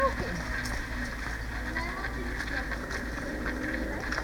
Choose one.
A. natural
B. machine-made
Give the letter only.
A